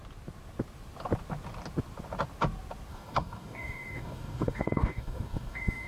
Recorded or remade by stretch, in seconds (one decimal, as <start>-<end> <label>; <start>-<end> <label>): 0.0-2.9 recorded; 2.9-5.9 remade